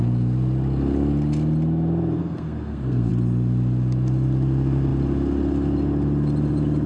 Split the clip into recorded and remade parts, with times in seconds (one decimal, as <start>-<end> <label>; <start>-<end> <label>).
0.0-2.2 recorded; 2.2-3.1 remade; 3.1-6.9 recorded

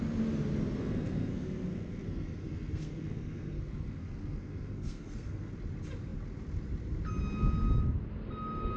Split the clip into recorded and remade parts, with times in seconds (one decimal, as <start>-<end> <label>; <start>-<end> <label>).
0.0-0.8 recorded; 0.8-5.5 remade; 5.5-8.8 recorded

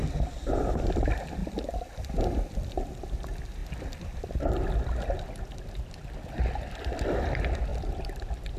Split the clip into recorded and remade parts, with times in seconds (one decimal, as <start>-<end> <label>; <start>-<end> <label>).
0.0-1.4 recorded; 1.4-1.9 remade; 1.9-3.6 recorded; 3.6-4.4 remade; 4.4-7.7 recorded; 7.7-8.6 remade

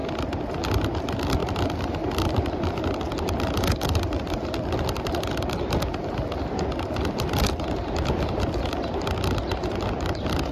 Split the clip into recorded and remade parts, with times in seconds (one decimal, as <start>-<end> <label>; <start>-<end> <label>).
0.0-10.5 recorded

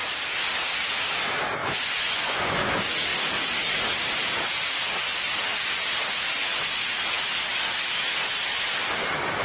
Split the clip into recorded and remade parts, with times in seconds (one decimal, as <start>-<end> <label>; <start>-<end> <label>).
0.0-1.6 recorded; 1.6-2.7 remade; 2.7-9.4 recorded